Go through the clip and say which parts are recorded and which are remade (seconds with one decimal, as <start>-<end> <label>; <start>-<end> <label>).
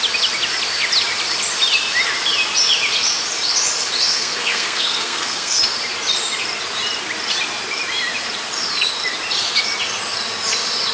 0.0-4.0 recorded; 4.0-5.6 remade; 5.6-10.9 recorded